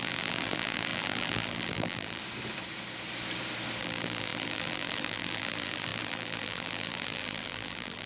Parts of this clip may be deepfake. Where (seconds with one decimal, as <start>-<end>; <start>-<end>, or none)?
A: 0.0-2.2; 3.8-8.1